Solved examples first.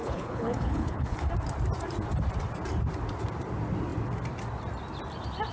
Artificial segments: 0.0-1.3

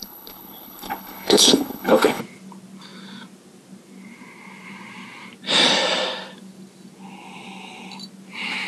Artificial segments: 0.0-2.2

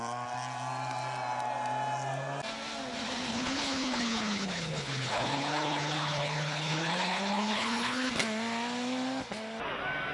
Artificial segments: 3.3-8.1

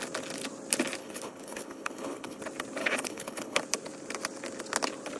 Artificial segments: 1.0-2.4; 2.8-3.6

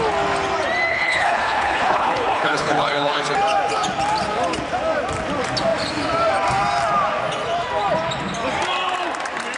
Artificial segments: 0.9-3.2

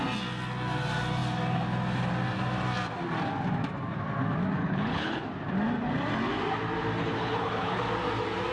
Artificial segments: 4.6-5.2; 7.0-7.8

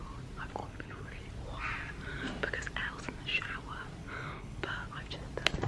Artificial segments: 0.6-1.2; 4.0-4.6